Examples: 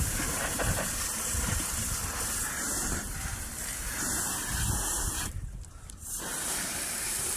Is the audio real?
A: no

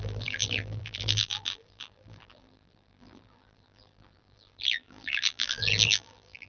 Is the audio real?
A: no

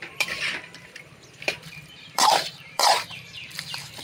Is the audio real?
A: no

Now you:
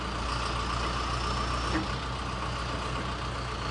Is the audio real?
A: yes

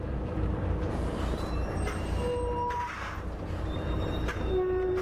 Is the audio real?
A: no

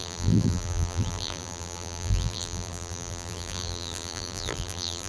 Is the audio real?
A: no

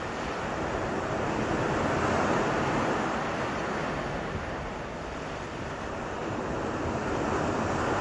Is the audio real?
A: yes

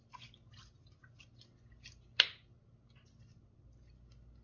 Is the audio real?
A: yes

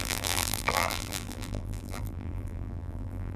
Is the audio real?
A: no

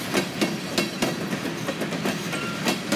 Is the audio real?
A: yes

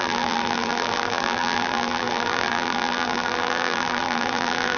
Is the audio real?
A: no